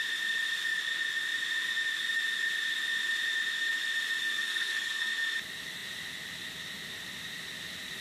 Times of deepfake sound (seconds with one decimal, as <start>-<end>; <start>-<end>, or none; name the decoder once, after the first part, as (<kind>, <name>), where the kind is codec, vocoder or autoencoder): 4.2-5.1 (codec, SNAC)